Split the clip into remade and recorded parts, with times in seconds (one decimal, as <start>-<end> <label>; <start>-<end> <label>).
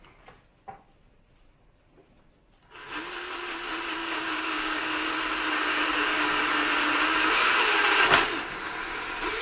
0.0-4.0 recorded; 4.0-5.1 remade; 5.1-5.7 recorded; 5.7-6.4 remade; 6.4-9.4 recorded